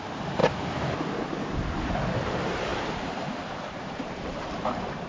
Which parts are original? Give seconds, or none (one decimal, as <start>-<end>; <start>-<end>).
0.4-2.1

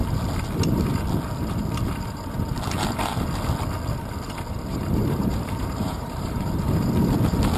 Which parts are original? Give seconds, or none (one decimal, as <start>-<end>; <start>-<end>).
0.0-4.7; 6.5-7.6